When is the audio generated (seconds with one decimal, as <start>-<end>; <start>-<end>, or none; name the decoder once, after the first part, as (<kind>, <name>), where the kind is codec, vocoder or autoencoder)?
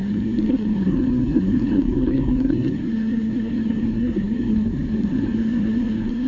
0.0-6.3 (codec, SNAC)